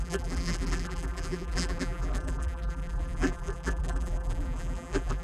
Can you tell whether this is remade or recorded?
remade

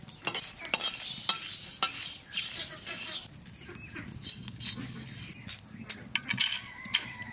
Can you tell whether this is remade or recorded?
recorded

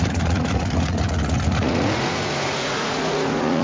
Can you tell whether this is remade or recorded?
remade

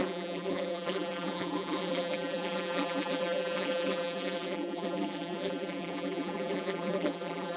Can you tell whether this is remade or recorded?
remade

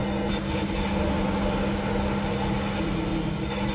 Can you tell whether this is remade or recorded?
recorded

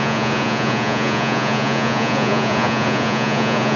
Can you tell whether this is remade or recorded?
remade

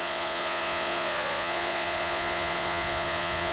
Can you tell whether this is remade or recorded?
remade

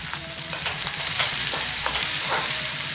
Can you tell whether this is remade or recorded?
remade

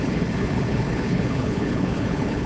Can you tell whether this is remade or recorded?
remade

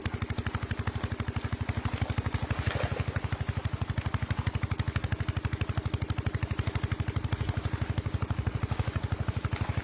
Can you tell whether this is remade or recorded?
recorded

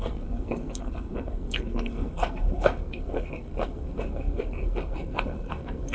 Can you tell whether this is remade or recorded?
remade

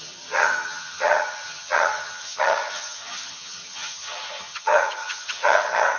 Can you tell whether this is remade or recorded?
remade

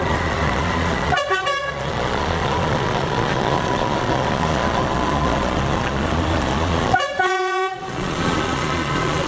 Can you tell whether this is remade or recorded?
remade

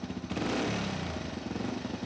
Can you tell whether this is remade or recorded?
recorded